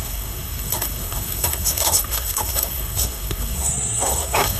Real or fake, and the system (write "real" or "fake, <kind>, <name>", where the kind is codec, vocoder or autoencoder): fake, codec, SNAC